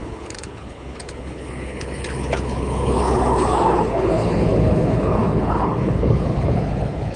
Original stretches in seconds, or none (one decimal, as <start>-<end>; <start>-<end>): none